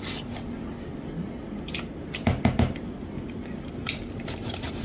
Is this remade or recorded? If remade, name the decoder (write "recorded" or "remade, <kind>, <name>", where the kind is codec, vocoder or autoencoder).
recorded